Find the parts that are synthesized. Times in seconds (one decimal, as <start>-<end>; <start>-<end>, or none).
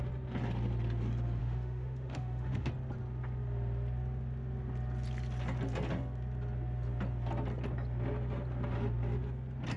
1.4-2.7